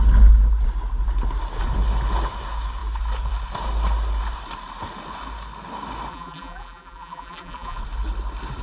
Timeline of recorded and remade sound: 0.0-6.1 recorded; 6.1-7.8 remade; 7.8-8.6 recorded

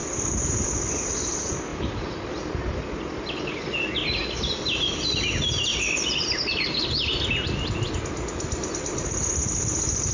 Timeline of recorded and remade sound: 0.0-1.7 recorded; 1.7-2.8 remade; 2.8-5.7 recorded; 5.7-6.5 remade; 6.5-10.1 recorded

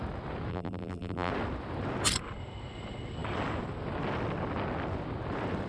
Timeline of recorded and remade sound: 0.0-0.5 recorded; 0.5-1.3 remade; 1.3-5.7 recorded